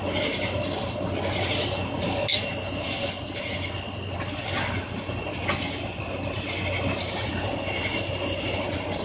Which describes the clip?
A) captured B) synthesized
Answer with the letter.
A